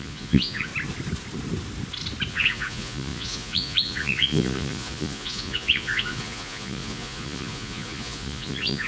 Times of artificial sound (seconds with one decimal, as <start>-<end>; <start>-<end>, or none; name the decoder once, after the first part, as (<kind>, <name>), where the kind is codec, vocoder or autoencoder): 0.0-0.7 (vocoder, Vocos); 2.3-8.9